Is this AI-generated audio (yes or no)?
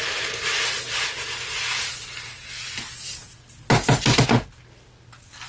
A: no